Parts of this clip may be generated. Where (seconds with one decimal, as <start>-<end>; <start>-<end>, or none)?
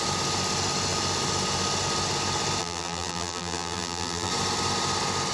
2.6-4.3